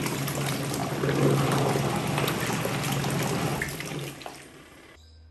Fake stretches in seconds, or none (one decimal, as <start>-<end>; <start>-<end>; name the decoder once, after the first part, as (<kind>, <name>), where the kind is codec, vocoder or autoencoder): none